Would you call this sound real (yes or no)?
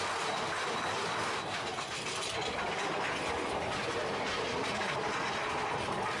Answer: yes